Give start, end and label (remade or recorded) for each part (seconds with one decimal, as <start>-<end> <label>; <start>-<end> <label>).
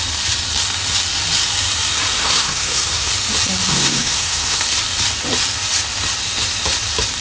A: 0.0-2.2 recorded; 2.2-3.1 remade; 3.1-3.7 recorded; 3.7-4.6 remade; 4.6-7.2 recorded